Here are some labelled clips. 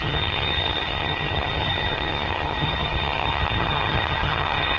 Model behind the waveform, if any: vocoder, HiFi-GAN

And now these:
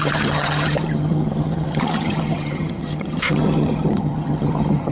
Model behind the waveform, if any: vocoder, HiFi-GAN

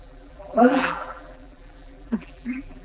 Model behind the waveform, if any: vocoder, BigVGAN v2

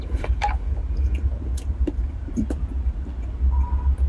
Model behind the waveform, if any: none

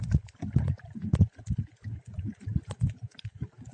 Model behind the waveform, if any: none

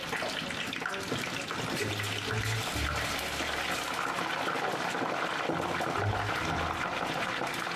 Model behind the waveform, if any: none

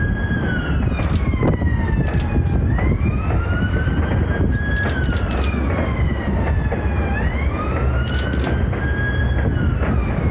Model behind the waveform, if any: none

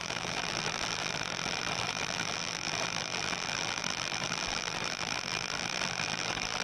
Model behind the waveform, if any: vocoder, BigVGAN v2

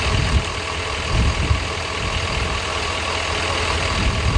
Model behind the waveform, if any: none